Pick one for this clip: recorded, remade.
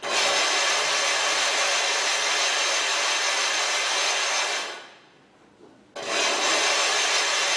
recorded